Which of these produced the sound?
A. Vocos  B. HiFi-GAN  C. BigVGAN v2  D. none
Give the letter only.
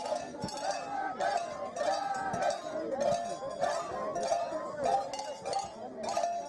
D